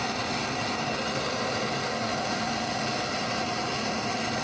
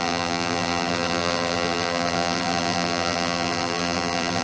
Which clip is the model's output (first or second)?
second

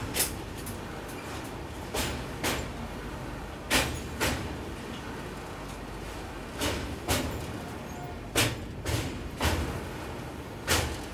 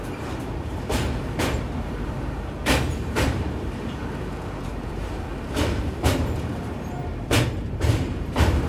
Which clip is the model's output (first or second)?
second